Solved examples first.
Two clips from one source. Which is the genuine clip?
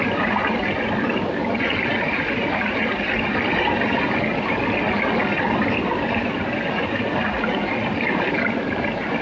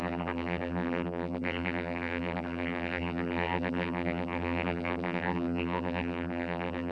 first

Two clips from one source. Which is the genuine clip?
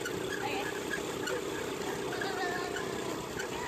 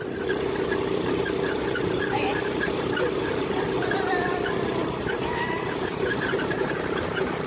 first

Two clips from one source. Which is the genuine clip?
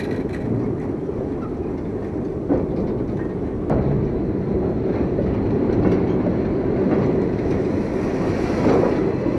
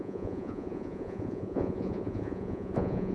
first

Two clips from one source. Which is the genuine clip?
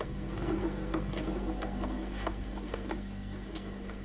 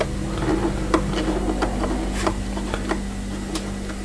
second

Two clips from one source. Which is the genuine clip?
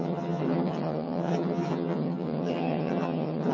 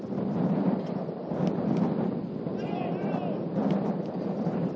second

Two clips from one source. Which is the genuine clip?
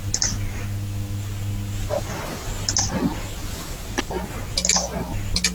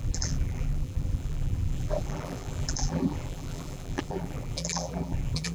first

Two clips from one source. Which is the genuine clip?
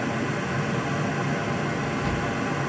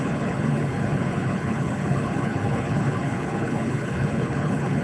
first